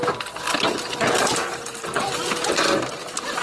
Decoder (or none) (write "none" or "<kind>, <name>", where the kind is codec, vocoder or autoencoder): none